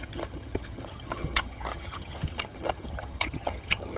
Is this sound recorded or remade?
remade